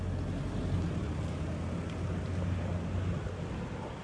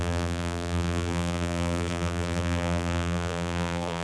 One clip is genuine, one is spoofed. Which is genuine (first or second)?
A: first